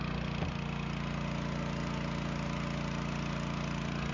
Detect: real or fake real